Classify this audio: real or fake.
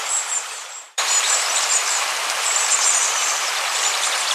fake